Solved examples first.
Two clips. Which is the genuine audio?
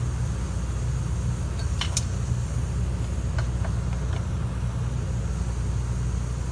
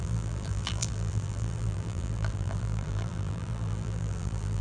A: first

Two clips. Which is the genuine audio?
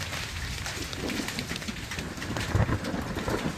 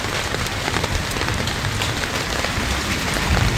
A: first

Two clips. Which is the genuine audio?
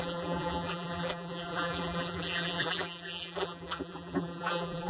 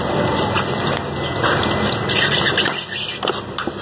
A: second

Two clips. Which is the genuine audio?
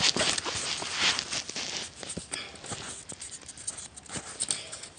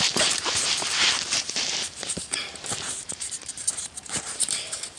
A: first